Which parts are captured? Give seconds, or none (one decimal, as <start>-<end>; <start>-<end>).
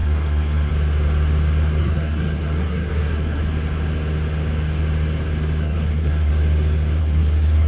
0.7-1.8; 3.4-5.6; 6.3-7.0